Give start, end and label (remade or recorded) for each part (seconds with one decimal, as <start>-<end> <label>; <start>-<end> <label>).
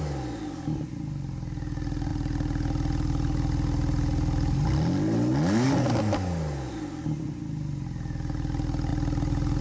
0.0-9.6 recorded